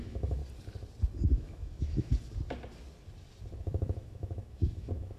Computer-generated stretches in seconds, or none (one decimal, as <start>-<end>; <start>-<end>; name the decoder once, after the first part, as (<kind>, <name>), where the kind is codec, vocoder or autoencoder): 0.0-0.4 (autoencoder, DAC-VAE); 1.3-2.1; 3.6-5.2